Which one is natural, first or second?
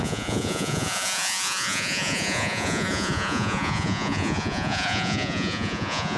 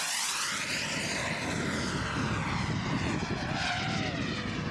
second